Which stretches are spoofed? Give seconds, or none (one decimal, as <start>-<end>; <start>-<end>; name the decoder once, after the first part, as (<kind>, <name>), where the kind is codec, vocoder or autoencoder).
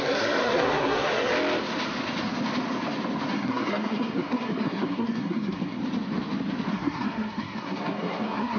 0.0-1.3 (codec, SNAC); 3.3-5.8; 6.7-8.6